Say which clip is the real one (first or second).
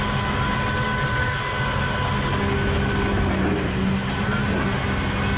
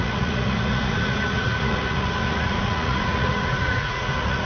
first